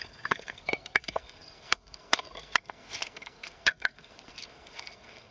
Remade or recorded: remade